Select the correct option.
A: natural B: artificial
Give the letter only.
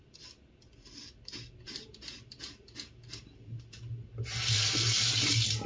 A